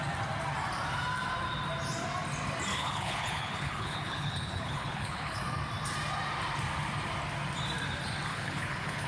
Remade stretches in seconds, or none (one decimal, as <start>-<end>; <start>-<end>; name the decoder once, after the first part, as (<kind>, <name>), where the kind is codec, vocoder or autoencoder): 2.7-5.4 (codec, HILCodec); 8.3-9.1